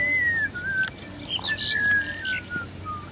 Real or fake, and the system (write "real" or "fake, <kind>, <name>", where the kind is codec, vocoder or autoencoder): real